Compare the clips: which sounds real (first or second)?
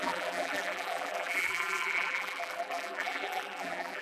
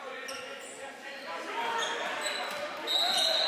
second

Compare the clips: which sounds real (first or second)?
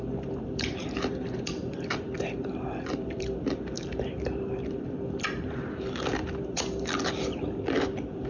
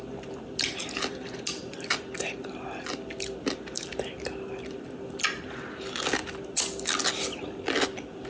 second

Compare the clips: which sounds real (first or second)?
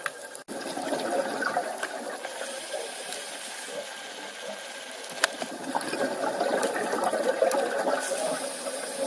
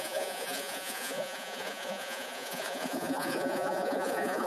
first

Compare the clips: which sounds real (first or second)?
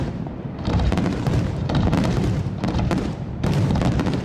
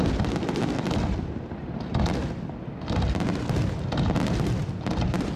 second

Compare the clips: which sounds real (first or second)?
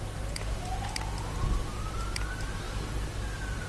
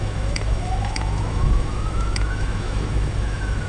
first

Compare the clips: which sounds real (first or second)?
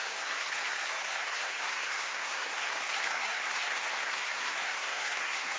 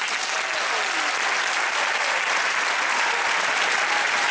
second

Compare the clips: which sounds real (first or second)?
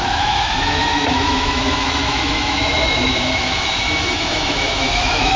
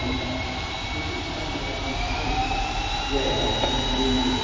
second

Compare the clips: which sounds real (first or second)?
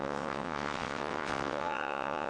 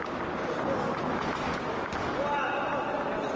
second